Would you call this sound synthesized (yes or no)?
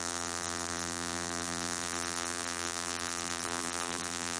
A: yes